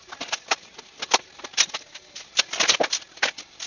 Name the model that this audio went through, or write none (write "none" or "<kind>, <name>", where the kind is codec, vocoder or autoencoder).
none